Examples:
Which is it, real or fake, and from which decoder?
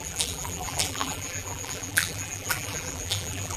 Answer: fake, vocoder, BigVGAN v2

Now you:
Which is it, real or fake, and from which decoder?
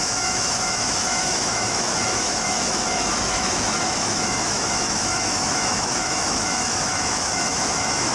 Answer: fake, autoencoder, DAC-VAE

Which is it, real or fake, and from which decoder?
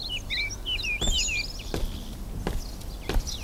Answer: real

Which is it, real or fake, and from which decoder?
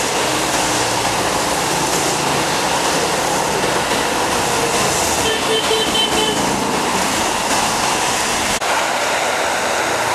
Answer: real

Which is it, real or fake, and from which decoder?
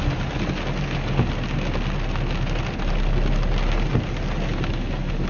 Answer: real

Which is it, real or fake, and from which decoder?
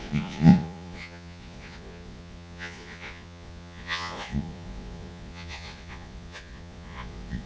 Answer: fake, vocoder, Vocos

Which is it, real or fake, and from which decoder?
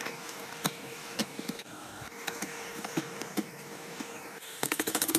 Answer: fake, codec, DAC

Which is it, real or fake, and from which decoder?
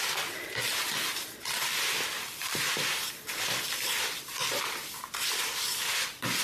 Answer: real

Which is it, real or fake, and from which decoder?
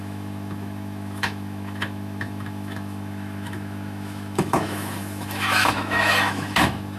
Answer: fake, autoencoder, DAC-VAE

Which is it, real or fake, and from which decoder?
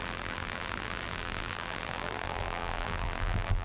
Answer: fake, vocoder, BigVGAN v2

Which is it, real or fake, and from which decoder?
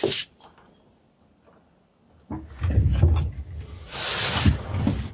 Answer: real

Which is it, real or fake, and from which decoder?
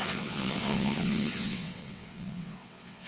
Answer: fake, vocoder, WaveNeXt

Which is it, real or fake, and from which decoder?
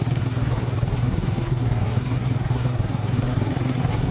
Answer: fake, codec, SNAC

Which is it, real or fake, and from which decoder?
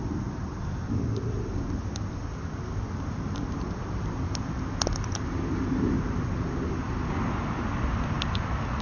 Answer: real